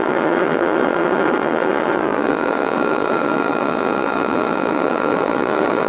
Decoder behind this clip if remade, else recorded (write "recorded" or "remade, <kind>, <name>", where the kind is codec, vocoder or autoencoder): remade, vocoder, Vocos